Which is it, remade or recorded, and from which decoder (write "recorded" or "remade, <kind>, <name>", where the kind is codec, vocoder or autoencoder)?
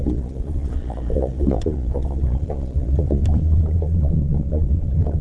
remade, vocoder, Vocos